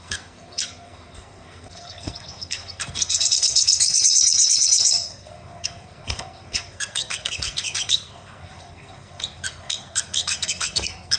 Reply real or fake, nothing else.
fake